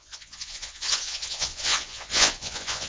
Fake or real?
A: fake